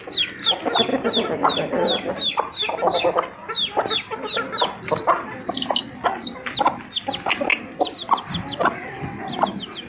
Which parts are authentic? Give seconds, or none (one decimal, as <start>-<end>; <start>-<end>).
0.0-7.5; 9.0-9.9